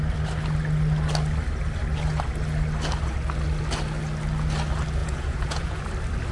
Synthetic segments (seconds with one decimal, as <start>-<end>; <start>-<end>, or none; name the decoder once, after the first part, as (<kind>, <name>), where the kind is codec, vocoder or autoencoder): 5.0-5.8 (vocoder, Vocos)